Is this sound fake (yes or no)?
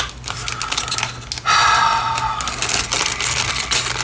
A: no